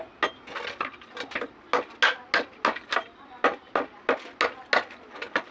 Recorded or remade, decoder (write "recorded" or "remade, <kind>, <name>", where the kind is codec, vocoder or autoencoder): recorded